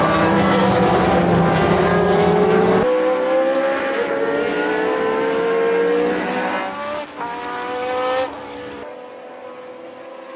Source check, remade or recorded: recorded